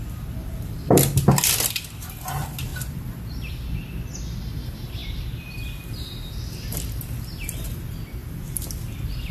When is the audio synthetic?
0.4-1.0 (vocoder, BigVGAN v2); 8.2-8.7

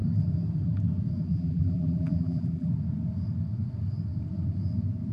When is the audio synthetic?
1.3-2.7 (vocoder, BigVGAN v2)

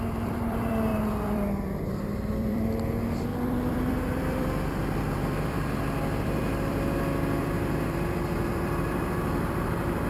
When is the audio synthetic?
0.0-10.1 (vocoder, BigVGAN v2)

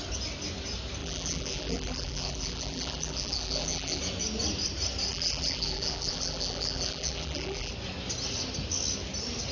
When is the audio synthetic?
1.0-4.0 (vocoder, BigVGAN v2); 5.1-7.7